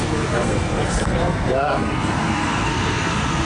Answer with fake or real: fake